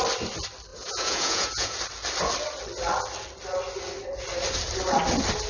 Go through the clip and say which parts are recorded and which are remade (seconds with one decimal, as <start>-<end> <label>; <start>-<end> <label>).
0.0-0.7 recorded; 0.7-1.8 remade; 1.8-5.5 recorded